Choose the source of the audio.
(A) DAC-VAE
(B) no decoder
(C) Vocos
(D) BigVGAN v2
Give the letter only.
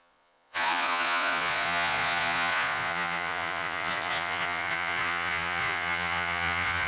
C